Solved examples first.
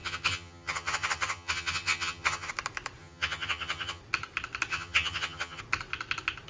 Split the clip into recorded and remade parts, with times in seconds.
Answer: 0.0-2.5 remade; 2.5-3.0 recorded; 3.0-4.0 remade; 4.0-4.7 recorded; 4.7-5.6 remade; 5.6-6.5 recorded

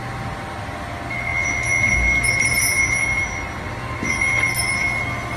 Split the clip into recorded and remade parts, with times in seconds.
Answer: 0.0-5.4 recorded

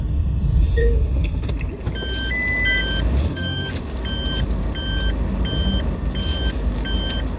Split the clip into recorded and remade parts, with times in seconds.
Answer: 0.0-0.8 recorded; 0.8-1.5 remade; 1.5-3.2 recorded; 3.2-3.7 remade; 3.7-7.4 recorded

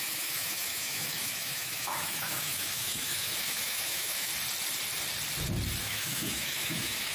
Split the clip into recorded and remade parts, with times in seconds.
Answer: 0.0-4.3 remade; 4.3-5.8 recorded; 5.8-7.1 remade

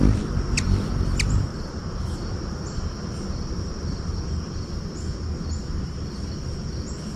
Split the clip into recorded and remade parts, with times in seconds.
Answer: 0.0-1.5 recorded; 1.5-4.2 remade; 4.2-7.2 recorded